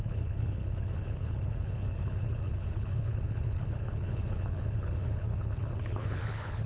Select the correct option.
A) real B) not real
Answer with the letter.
B